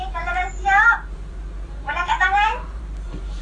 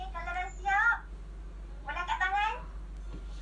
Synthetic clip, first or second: first